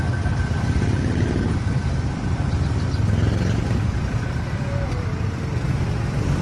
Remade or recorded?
recorded